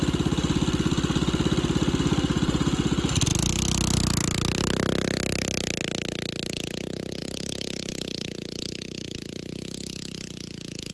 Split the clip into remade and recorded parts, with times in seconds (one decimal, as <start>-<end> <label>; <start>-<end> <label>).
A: 0.0-10.9 recorded